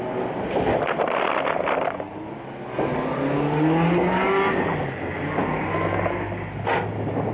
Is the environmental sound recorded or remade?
recorded